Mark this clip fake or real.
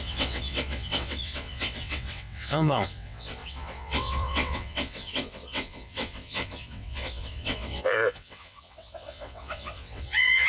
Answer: fake